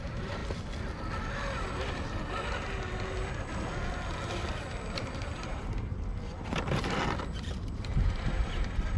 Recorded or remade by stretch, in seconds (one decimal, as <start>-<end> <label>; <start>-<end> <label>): 0.0-0.4 remade; 0.4-5.0 recorded; 5.0-6.1 remade; 6.1-7.2 recorded; 7.2-9.0 remade